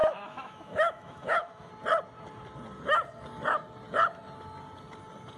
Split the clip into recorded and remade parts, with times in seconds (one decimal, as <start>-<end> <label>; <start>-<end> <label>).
0.0-1.7 remade; 1.7-5.4 recorded